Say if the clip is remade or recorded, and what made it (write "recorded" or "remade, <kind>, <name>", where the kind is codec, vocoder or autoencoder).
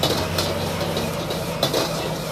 recorded